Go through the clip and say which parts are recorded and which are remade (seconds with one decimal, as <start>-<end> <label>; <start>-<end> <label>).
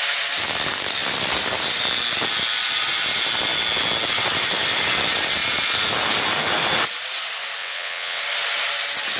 0.0-7.6 recorded; 7.6-8.2 remade; 8.2-9.2 recorded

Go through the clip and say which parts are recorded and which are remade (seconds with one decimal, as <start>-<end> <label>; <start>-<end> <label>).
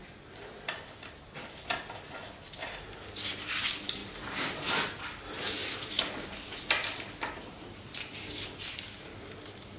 0.0-9.8 recorded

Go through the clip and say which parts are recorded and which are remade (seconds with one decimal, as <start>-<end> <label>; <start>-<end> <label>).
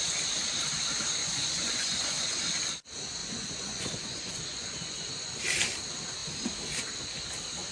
0.0-1.2 recorded; 1.2-2.5 remade; 2.5-3.2 recorded; 3.2-5.4 remade; 5.4-7.7 recorded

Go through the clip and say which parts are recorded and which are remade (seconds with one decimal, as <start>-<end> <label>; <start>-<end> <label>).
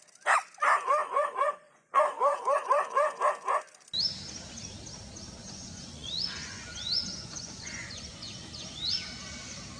0.0-1.0 recorded; 1.0-3.2 remade; 3.2-5.4 recorded; 5.4-9.1 remade; 9.1-9.8 recorded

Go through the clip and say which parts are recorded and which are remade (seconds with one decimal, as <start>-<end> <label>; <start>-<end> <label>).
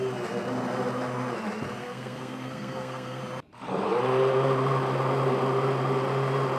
0.0-1.8 recorded; 1.8-3.2 remade; 3.2-6.6 recorded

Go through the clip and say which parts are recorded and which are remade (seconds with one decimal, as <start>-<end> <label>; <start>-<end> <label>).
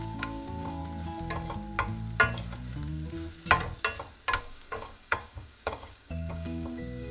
0.0-0.8 remade; 0.8-4.4 recorded; 4.4-7.1 remade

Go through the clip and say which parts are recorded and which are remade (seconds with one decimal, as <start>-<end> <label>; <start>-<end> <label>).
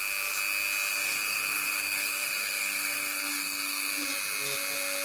0.0-0.9 recorded; 0.9-3.9 remade; 3.9-5.0 recorded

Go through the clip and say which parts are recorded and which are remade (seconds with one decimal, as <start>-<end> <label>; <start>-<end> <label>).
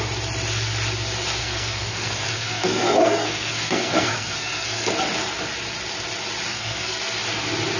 0.0-1.4 recorded; 1.4-4.9 remade; 4.9-6.5 recorded; 6.5-7.0 remade; 7.0-7.8 recorded